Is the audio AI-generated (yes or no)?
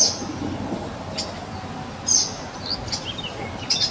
no